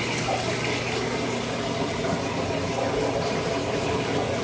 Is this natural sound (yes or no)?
yes